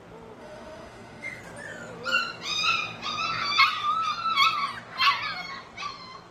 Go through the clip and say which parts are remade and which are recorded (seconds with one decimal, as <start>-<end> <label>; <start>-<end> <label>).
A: 0.0-0.4 recorded; 0.4-1.4 remade; 1.4-6.3 recorded